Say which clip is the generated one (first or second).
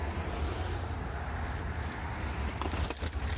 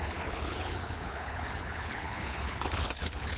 second